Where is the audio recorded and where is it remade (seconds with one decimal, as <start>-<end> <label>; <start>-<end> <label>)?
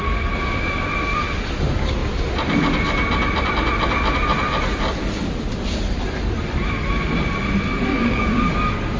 0.0-7.9 recorded; 7.9-8.5 remade; 8.5-9.0 recorded